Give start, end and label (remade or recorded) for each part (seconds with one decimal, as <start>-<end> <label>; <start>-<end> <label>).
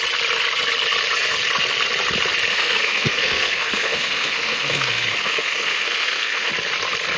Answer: 0.0-2.5 recorded; 2.5-6.5 remade; 6.5-7.2 recorded